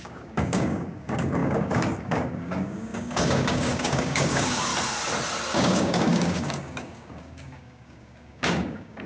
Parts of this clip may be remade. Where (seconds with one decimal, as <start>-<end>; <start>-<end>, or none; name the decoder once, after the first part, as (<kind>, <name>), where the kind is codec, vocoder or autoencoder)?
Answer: 0.0-4.7 (codec, DAC); 5.5-9.1